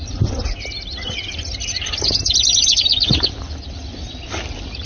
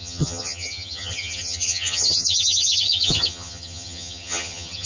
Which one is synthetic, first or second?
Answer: second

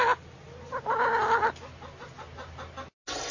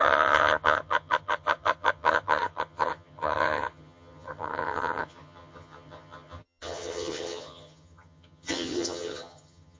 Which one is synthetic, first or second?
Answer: second